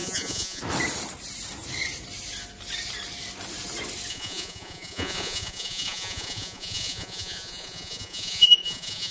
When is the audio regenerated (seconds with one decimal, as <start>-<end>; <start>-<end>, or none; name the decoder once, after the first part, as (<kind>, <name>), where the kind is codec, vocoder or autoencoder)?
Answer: 0.0-0.6 (vocoder, Vocos); 4.1-9.1